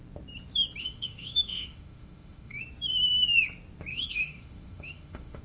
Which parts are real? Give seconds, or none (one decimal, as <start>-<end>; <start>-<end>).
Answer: 0.0-0.8; 2.6-3.9